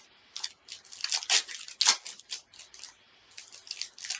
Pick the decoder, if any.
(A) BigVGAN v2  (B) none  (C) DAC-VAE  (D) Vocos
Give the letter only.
B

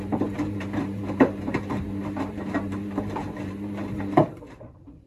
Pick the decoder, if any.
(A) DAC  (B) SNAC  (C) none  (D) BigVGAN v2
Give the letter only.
D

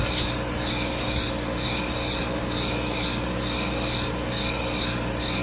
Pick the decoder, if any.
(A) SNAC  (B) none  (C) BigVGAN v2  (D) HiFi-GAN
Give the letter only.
B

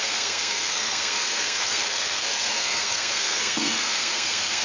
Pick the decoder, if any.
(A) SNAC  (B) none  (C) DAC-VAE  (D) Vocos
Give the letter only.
A